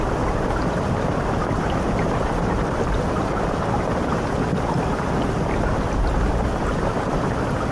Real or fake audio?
real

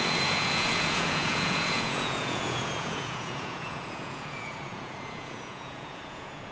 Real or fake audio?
fake